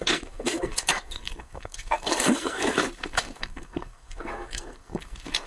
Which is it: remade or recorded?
remade